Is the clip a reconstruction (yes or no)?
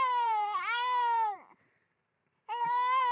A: yes